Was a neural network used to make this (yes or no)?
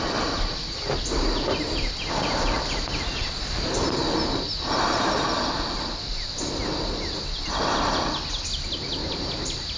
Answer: no